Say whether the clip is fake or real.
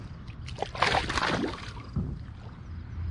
real